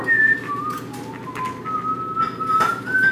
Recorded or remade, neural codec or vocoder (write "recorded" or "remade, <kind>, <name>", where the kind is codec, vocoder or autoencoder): recorded